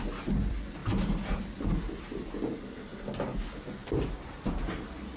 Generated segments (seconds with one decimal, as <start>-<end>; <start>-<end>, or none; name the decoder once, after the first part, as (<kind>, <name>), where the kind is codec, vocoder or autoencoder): none